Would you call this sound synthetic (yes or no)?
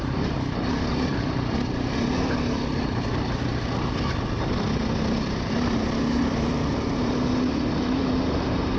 no